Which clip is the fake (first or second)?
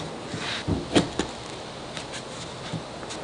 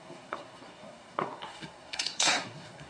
second